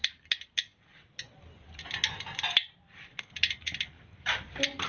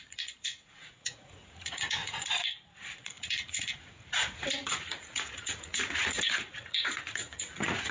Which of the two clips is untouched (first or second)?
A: first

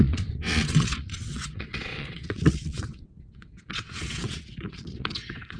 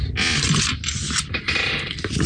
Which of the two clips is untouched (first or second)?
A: second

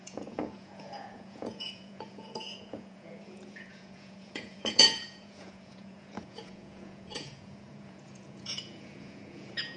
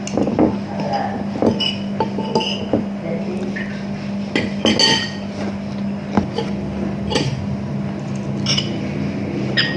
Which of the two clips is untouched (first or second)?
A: second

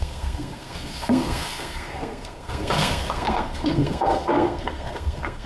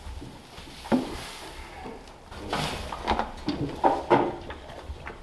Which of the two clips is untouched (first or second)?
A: second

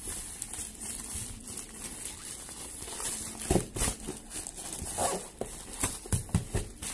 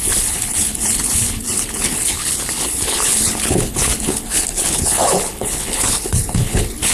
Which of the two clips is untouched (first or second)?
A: first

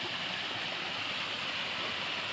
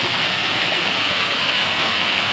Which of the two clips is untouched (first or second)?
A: first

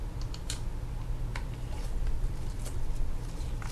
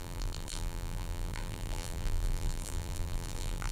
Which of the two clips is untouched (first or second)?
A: first